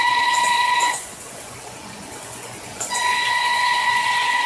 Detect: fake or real fake